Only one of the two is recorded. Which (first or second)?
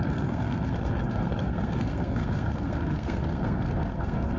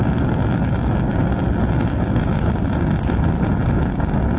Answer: second